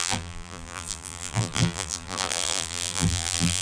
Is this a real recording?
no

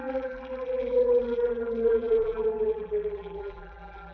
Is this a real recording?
no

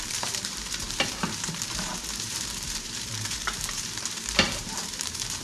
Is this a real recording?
no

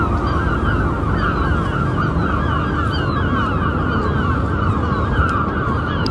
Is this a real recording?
yes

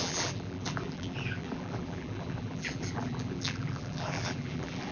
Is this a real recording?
no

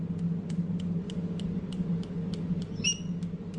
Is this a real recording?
yes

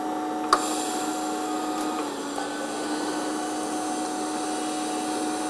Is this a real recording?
yes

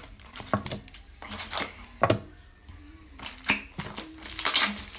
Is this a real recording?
yes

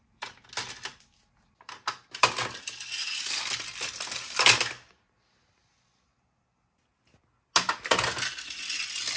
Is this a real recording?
yes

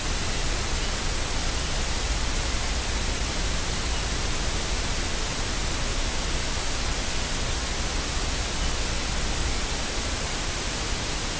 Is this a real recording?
yes